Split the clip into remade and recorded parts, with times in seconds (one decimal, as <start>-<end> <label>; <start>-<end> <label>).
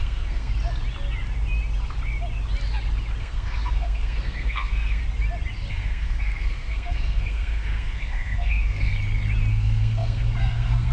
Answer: 0.0-0.5 remade; 0.5-3.2 recorded; 3.2-5.0 remade; 5.0-5.7 recorded; 5.7-8.9 remade; 8.9-9.5 recorded; 9.5-10.9 remade